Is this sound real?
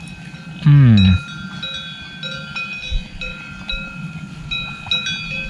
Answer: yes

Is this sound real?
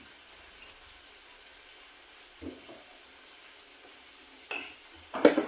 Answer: yes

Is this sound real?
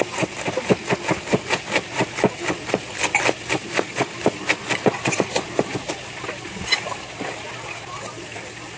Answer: no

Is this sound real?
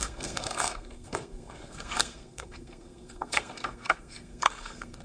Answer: no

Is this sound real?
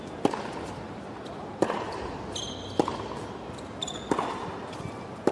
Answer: yes